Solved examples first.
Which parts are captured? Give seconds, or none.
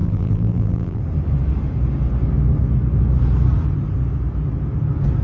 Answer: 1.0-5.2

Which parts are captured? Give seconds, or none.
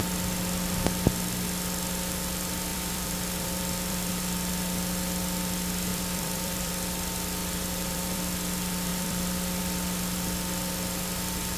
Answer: 0.0-2.7; 4.1-5.9; 6.7-7.4; 8.2-8.9; 9.6-11.6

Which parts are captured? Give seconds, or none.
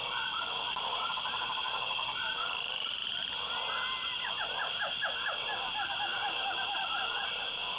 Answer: 3.0-4.0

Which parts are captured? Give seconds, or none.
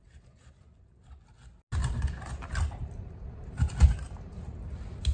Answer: 0.0-1.8; 3.3-5.1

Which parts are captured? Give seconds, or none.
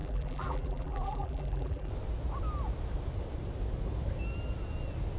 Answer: 1.9-5.2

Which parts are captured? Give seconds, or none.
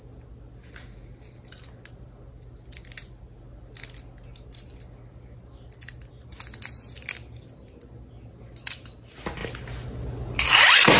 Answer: 0.0-11.0